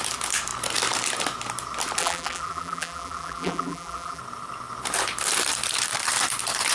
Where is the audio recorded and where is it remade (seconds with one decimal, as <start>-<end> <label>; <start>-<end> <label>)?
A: 0.0-2.0 recorded; 2.0-4.2 remade; 4.2-6.7 recorded